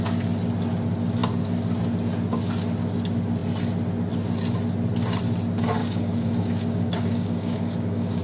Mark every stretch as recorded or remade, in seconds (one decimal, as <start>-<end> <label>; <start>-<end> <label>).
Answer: 0.0-5.8 recorded; 5.8-8.2 remade